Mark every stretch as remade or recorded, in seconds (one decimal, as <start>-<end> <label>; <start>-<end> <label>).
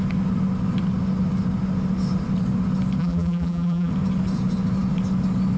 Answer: 0.0-3.0 recorded; 3.0-3.9 remade; 3.9-5.6 recorded